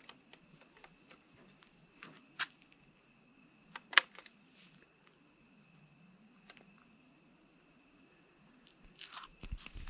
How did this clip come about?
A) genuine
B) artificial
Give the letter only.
A